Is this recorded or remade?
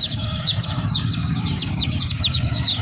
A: remade